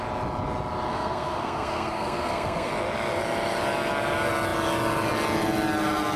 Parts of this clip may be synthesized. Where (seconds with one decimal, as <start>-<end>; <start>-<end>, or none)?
0.9-2.7